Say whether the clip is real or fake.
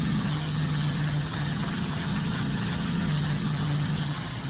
fake